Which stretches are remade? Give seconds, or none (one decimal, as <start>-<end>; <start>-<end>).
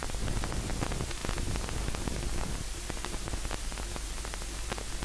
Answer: none